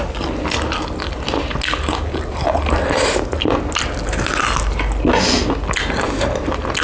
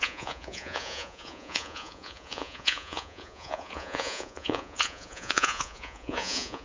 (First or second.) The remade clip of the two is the second